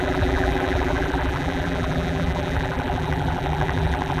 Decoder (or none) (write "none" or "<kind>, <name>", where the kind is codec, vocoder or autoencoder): vocoder, BigVGAN v2